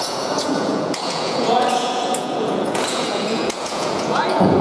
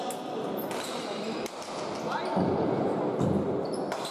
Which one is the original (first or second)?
second